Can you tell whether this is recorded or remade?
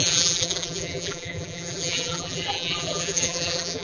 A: remade